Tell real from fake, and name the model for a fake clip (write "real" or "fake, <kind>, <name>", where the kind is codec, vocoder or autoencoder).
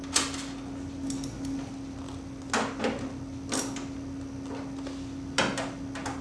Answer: real